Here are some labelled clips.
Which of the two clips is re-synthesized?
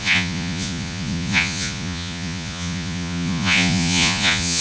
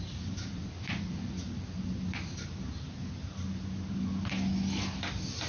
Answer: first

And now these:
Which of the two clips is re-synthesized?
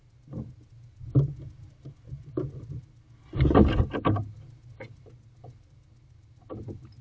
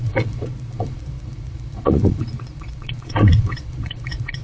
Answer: second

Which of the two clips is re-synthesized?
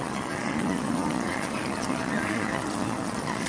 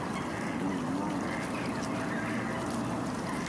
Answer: first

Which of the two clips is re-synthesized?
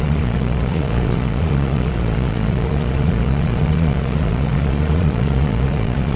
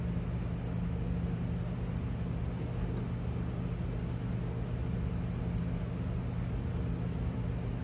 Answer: first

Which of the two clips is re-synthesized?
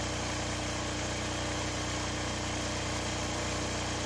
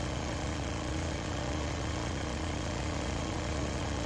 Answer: second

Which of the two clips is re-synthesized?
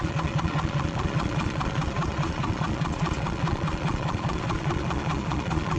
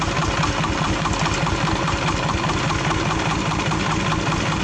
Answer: first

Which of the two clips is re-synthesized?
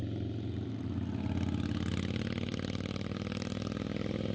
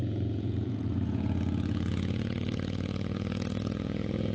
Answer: second